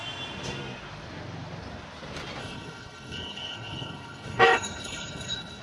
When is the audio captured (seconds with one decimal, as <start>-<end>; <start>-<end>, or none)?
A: 0.0-2.4